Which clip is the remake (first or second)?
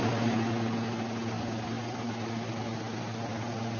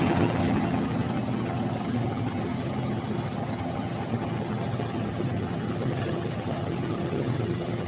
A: second